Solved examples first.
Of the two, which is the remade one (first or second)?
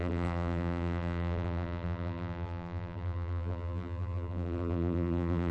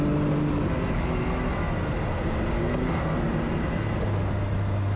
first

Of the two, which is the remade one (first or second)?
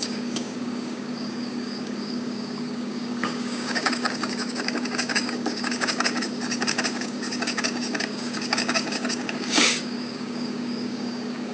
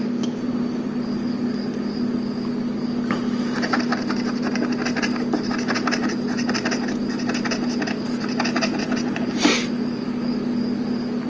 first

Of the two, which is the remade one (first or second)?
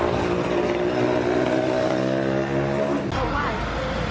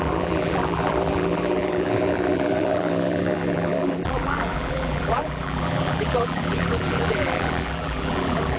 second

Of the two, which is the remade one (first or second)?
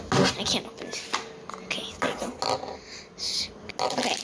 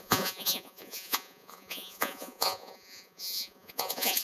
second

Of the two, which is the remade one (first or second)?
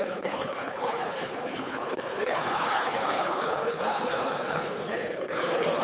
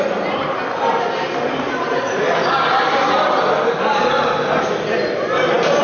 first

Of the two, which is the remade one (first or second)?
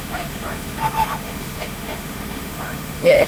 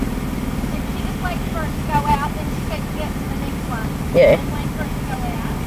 first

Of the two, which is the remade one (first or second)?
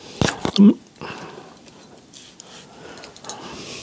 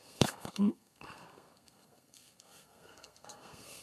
second